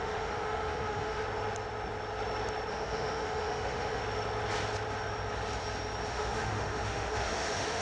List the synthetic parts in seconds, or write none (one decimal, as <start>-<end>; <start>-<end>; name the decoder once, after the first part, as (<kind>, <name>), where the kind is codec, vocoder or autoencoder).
0.0-1.2 (autoencoder, DAC-VAE); 2.7-4.0; 6.1-7.8